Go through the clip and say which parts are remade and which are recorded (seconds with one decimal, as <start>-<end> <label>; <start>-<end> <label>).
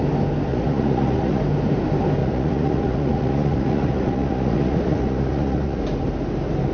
0.0-0.5 recorded; 0.5-1.4 remade; 1.4-2.2 recorded; 2.2-5.8 remade; 5.8-6.7 recorded